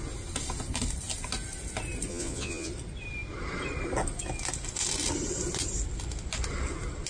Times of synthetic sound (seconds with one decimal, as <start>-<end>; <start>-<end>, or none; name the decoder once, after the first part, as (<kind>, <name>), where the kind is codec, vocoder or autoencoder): 2.1-2.7 (vocoder, Vocos)